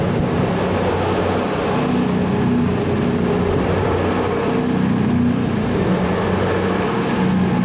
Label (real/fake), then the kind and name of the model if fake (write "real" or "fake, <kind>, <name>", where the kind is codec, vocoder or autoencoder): real